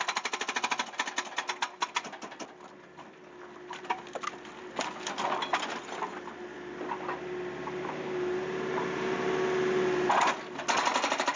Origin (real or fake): real